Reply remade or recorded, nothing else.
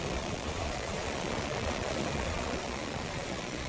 remade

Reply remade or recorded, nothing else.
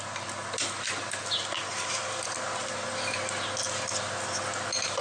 recorded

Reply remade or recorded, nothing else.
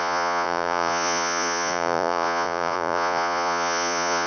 remade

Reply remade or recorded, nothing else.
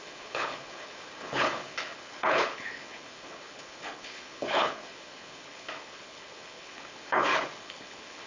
remade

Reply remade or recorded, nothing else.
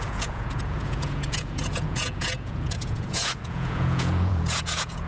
remade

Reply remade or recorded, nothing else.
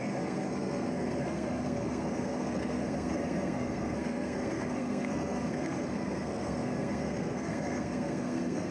remade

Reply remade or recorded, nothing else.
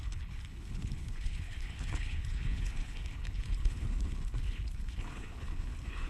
remade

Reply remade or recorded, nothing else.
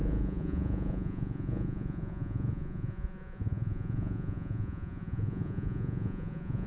remade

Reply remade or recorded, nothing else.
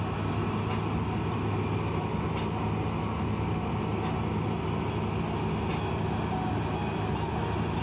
recorded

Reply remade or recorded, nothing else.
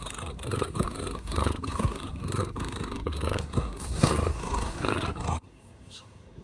remade